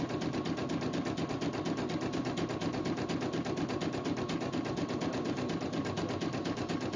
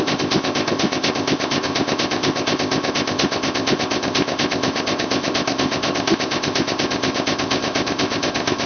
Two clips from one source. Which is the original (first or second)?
first